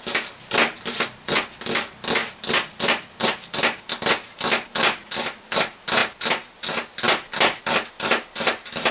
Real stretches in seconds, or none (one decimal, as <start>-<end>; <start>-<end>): 0.0-8.9